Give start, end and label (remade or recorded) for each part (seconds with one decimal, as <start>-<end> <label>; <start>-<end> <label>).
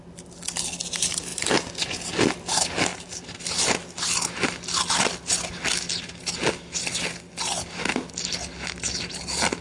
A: 0.0-2.9 recorded; 2.9-3.4 remade; 3.4-9.6 recorded